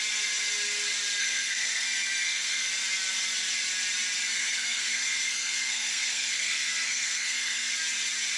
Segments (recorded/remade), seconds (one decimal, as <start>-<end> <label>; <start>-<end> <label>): 0.0-1.2 recorded; 1.2-2.7 remade; 2.7-4.3 recorded; 4.3-7.7 remade; 7.7-8.4 recorded